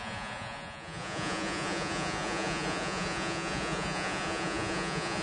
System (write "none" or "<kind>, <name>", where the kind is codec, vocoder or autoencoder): vocoder, Vocos